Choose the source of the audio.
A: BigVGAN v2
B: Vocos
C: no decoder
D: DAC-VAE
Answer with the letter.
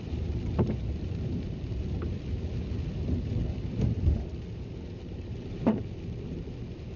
A